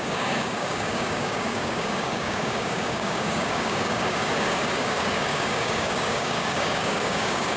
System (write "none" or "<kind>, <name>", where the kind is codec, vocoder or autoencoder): codec, DAC